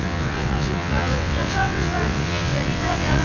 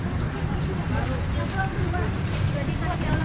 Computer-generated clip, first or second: first